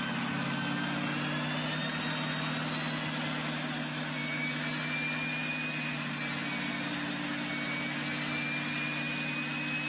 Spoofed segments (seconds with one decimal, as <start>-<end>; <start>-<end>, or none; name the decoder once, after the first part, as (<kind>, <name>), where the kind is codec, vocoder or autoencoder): none